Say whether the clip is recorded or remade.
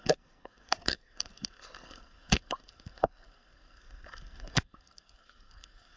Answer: remade